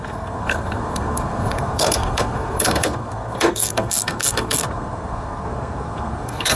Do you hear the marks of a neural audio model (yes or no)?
yes